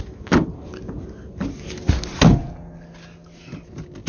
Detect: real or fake real